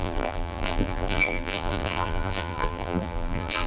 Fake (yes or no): yes